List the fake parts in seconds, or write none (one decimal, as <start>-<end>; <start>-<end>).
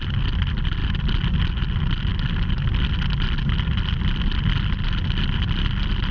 none